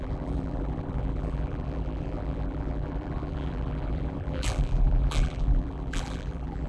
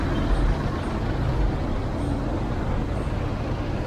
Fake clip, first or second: first